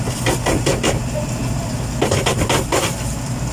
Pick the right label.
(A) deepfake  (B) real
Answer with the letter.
B